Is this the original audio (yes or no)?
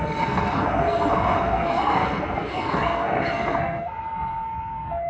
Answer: no